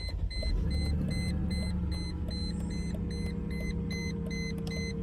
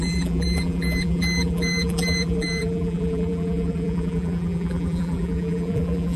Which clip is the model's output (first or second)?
second